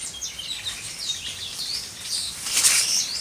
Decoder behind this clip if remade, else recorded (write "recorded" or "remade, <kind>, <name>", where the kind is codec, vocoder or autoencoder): remade, vocoder, BigVGAN v2